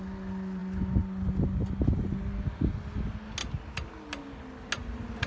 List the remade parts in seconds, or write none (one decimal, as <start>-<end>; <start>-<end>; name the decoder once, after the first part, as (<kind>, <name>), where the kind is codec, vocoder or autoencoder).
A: none